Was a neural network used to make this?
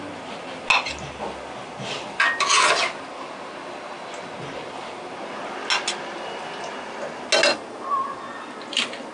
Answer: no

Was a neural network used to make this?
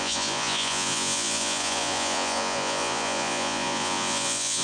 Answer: yes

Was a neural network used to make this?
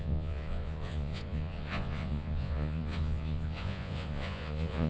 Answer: yes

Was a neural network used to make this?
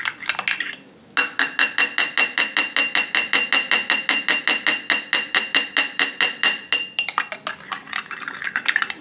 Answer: no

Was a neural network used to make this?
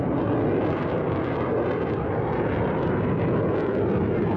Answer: no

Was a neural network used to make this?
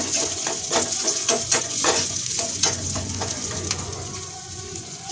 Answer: yes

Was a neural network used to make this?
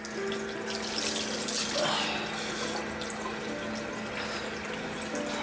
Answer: no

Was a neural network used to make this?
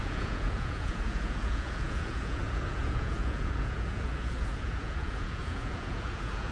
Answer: yes